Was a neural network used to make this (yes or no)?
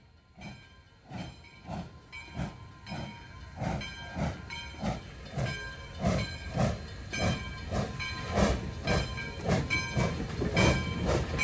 no